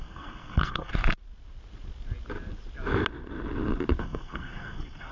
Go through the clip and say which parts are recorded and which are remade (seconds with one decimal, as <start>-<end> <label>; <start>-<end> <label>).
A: 0.0-0.9 remade; 0.9-4.0 recorded; 4.0-5.1 remade